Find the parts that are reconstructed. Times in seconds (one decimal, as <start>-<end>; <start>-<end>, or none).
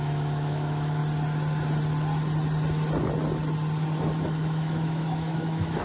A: 0.0-1.0; 4.2-5.8